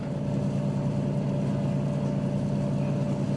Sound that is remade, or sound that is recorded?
recorded